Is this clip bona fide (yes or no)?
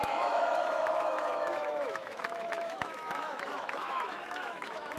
no